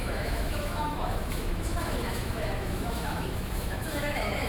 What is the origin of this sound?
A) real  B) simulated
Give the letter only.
B